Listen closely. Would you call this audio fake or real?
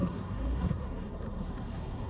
fake